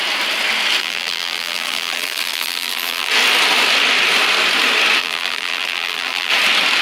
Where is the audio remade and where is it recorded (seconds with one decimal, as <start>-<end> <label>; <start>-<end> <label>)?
0.0-0.8 recorded; 0.8-3.1 remade; 3.1-5.0 recorded; 5.0-6.3 remade; 6.3-6.8 recorded